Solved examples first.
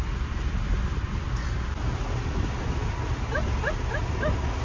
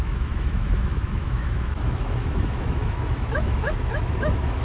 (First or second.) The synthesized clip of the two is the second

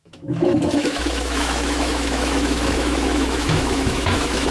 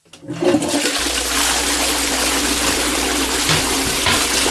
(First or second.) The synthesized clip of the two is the first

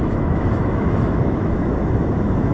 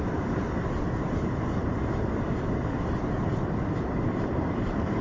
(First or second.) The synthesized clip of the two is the first